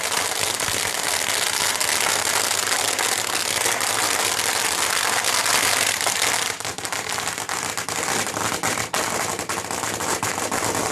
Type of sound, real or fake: real